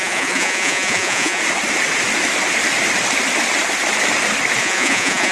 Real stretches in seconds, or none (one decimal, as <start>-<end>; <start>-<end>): 1.4-4.6